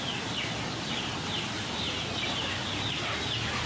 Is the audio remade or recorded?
recorded